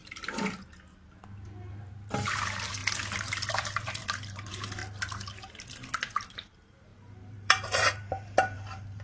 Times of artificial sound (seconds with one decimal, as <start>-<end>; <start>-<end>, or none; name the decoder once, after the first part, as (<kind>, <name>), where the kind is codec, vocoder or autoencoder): 1.8-2.8 (vocoder, BigVGAN v2); 3.5-4.8; 6.3-9.0